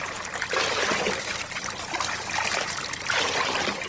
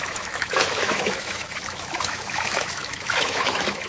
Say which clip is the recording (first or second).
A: first